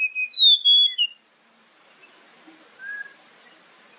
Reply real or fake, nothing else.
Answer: real